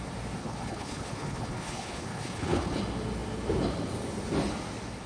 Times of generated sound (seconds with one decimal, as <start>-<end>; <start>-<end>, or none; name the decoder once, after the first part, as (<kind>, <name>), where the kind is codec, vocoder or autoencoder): 0.4-2.8 (codec, HILCodec)